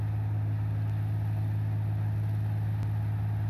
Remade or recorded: recorded